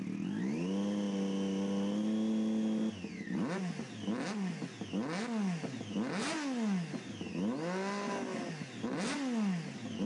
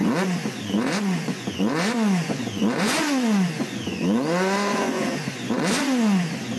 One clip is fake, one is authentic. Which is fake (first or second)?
second